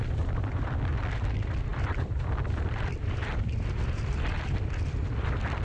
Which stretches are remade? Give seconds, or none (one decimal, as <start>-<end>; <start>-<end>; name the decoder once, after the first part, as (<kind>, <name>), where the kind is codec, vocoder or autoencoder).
0.0-5.6 (vocoder, BigVGAN v2)